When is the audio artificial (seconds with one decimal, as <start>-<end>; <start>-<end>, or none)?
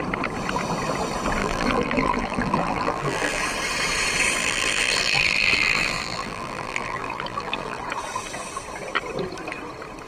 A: 1.4-3.4; 4.4-7.8